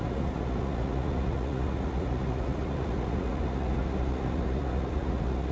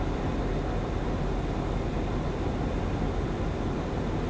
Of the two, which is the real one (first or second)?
second